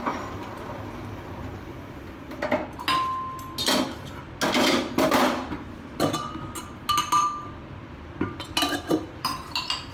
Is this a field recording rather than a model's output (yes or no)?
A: yes